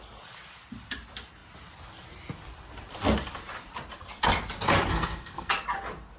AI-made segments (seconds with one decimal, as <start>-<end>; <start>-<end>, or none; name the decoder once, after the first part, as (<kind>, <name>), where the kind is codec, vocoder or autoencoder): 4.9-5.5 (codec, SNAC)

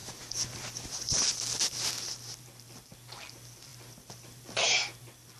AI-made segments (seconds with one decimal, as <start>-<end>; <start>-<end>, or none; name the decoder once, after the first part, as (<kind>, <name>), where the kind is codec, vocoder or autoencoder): none

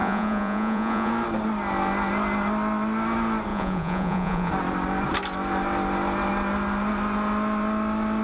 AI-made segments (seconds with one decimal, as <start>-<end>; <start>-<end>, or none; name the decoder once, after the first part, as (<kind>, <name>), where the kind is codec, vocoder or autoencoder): 0.0-1.1 (vocoder, Vocos); 3.5-4.5

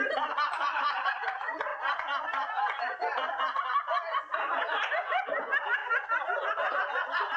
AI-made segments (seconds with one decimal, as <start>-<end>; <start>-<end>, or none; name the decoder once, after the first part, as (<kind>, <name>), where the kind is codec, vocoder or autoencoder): 0.0-5.8 (vocoder, BigVGAN v2); 6.7-7.4

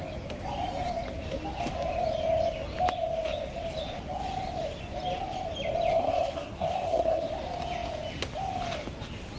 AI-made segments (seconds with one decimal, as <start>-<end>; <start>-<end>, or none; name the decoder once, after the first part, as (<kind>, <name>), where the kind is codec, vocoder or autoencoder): 5.9-7.3 (codec, SNAC)

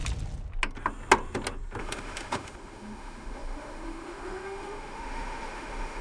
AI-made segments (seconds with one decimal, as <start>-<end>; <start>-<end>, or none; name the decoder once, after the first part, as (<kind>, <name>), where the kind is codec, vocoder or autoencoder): 1.8-6.0 (autoencoder, DAC-VAE)

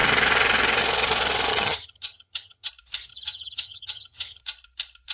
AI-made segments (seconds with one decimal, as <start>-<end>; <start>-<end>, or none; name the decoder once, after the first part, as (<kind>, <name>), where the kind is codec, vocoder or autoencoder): 1.5-2.7 (vocoder, HiFi-GAN); 3.1-4.4